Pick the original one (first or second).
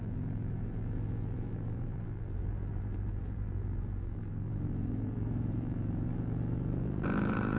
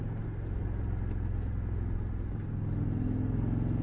second